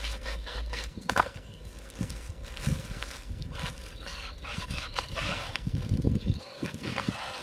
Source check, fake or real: fake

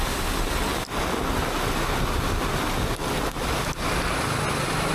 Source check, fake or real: real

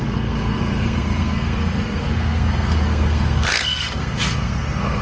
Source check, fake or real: fake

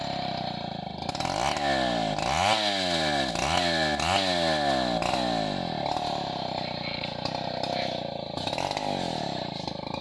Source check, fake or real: real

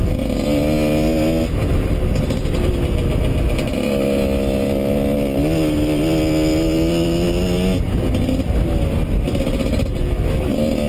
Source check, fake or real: real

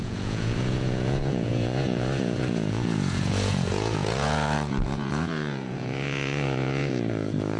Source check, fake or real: fake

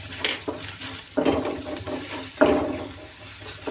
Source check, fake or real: real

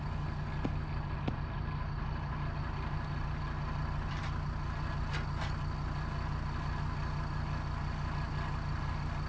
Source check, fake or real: real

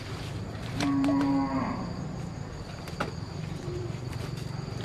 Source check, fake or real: fake